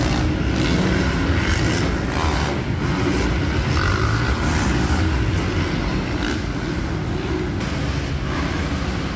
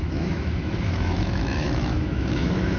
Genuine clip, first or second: first